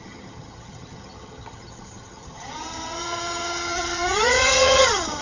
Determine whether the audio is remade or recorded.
remade